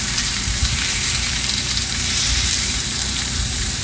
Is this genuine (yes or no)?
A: no